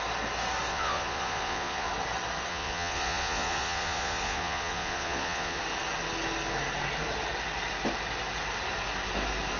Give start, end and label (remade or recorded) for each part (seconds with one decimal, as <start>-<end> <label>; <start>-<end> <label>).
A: 0.0-0.7 recorded; 0.7-1.9 remade; 1.9-2.5 recorded; 2.5-5.6 remade; 5.6-9.6 recorded